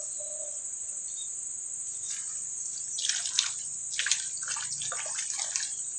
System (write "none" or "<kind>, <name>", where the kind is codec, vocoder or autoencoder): none